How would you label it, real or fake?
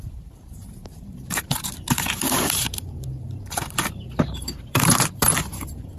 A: fake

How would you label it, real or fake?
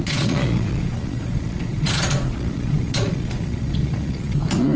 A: fake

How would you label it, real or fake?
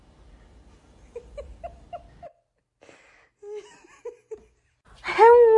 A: real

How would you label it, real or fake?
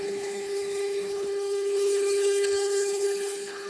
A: fake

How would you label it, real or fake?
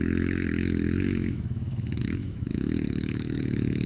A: fake